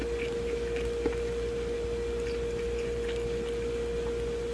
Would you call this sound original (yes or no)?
yes